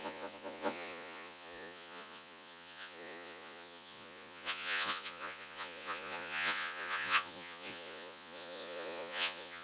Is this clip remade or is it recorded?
remade